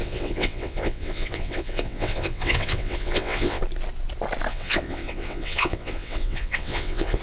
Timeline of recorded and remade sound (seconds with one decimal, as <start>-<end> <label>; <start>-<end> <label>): 0.0-3.6 remade; 3.6-4.5 recorded; 4.5-7.2 remade